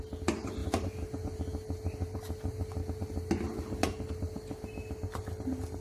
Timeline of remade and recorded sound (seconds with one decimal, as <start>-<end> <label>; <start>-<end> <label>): 0.0-5.8 recorded